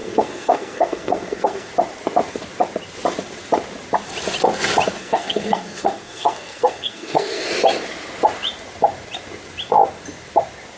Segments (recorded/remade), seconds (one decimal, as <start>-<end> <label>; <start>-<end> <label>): 0.0-1.7 remade; 1.7-5.0 recorded; 5.0-7.5 remade; 7.5-10.8 recorded